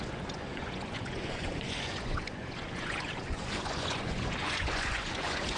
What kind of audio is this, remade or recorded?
remade